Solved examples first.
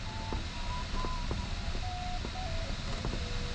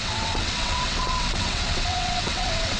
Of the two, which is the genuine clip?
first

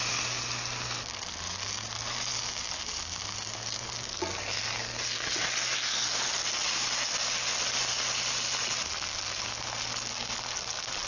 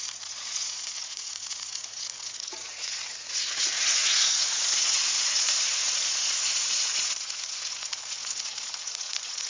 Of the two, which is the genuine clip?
first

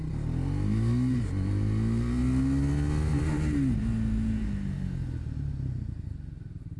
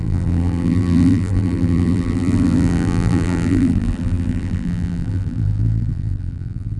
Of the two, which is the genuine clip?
first